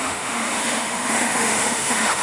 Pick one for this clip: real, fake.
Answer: fake